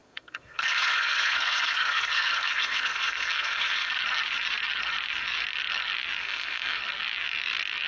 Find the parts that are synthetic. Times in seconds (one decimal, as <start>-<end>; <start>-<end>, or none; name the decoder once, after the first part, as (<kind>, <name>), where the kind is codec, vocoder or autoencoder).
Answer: 0.0-3.9 (codec, SNAC); 6.2-6.8